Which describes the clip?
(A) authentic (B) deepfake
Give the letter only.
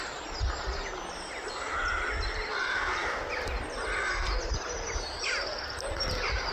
A